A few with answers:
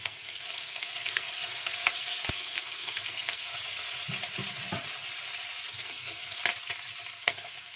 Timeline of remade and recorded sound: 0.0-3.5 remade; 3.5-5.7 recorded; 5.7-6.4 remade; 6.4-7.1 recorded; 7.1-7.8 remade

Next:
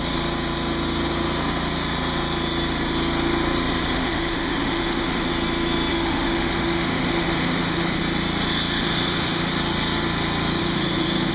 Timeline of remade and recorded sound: 0.0-3.8 recorded; 3.8-5.3 remade; 5.3-5.9 recorded; 5.9-8.0 remade; 8.0-8.8 recorded; 8.8-9.5 remade; 9.5-10.6 recorded; 10.6-11.3 remade

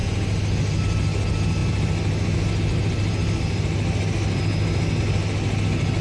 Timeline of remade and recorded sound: 0.0-6.0 recorded

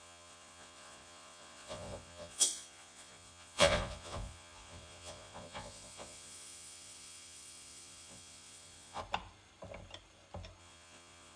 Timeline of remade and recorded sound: 0.0-9.0 remade; 9.0-10.6 recorded; 10.6-11.4 remade

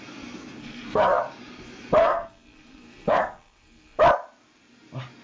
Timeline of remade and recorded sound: 0.0-0.6 recorded; 0.6-1.2 remade; 1.2-2.0 recorded; 2.0-4.0 remade; 4.0-5.2 recorded

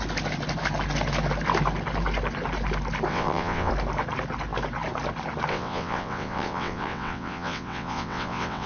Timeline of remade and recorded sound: 0.0-3.1 recorded; 3.1-3.7 remade; 3.7-5.5 recorded; 5.5-8.7 remade

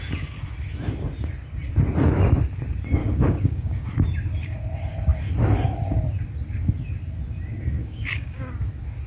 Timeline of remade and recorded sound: 0.0-3.0 recorded; 3.0-3.9 remade; 3.9-7.8 recorded; 7.8-8.5 remade; 8.5-9.1 recorded